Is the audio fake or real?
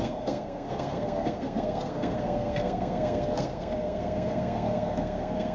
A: fake